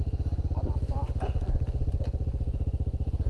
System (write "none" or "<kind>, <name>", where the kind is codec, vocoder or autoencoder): none